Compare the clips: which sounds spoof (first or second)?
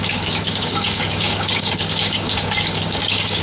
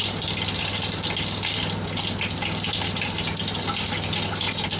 first